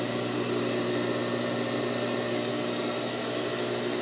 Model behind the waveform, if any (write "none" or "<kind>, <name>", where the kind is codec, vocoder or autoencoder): none